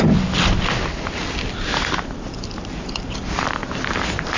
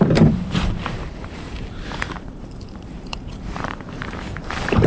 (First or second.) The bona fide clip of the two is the first